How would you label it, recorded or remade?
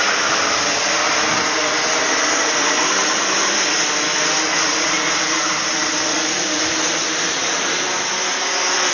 remade